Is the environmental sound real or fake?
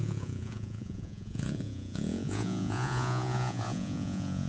fake